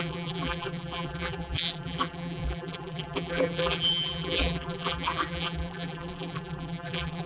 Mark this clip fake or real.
fake